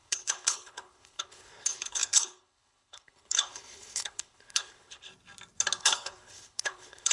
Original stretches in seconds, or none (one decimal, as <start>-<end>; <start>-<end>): 5.1-5.8